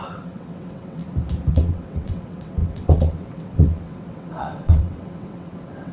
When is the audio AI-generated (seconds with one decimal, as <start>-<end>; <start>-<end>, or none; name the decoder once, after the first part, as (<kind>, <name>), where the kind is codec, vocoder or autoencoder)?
0.0-1.0 (vocoder, WaveNeXt); 1.5-5.9